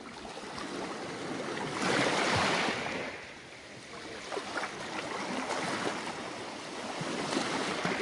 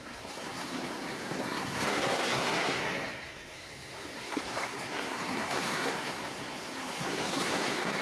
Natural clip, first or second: first